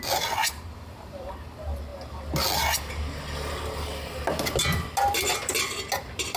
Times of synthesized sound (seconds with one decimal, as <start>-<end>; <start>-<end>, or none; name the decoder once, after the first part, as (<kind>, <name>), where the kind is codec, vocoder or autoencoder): 0.4-1.3 (vocoder, BigVGAN v2)